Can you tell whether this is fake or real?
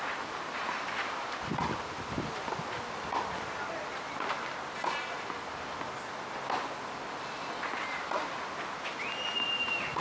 real